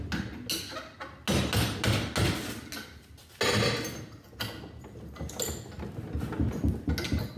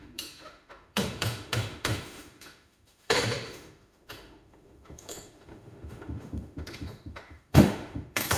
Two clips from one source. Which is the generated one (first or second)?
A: second